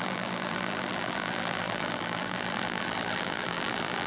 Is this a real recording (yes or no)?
no